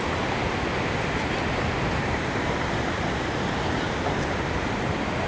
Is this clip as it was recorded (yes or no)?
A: yes